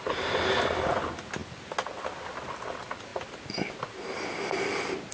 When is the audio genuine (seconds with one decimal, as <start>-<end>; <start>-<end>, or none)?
0.0-3.1; 3.7-5.1